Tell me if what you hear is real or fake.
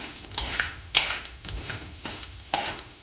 fake